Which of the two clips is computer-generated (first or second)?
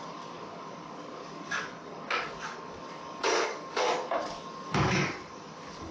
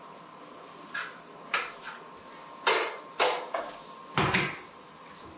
first